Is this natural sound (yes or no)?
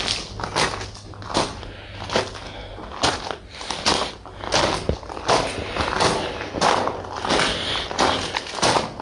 yes